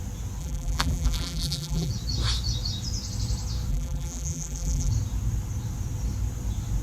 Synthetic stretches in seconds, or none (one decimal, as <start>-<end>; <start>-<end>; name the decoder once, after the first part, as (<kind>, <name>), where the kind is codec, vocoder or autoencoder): 0.4-1.9 (vocoder, BigVGAN v2); 3.7-4.9